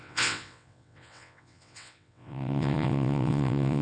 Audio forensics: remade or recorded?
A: remade